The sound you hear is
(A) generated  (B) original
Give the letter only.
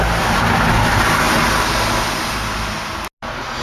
B